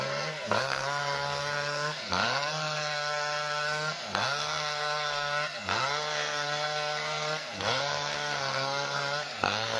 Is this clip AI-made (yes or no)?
yes